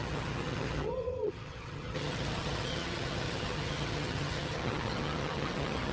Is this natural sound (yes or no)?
no